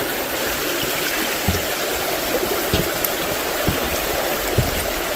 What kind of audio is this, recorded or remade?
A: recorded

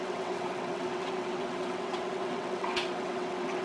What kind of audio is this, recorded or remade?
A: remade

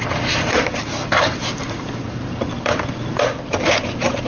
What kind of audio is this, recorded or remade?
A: remade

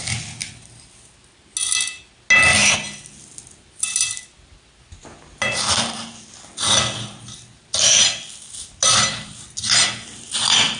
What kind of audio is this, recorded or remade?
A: recorded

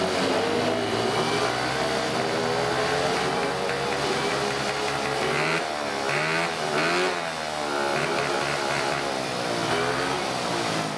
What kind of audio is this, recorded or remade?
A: recorded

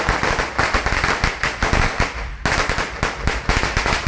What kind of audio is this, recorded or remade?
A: recorded